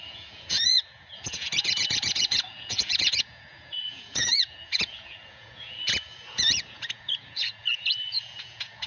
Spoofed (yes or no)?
yes